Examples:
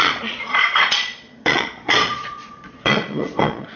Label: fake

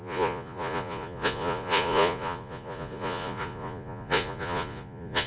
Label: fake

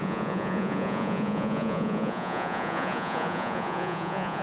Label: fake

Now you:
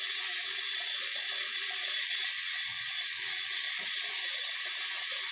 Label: fake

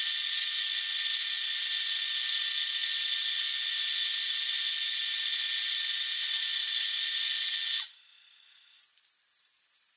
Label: real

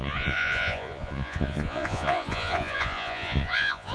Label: fake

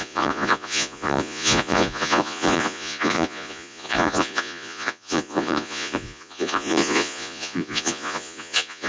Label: fake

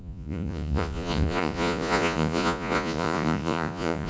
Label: fake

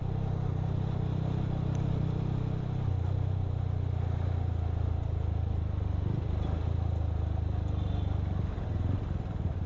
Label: real